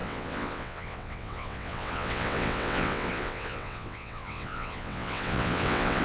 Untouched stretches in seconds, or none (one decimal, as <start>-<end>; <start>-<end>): none